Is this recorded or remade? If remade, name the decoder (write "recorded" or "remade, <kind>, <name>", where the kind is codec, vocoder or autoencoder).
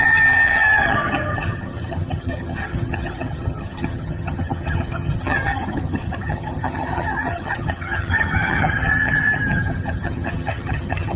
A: remade, vocoder, HiFi-GAN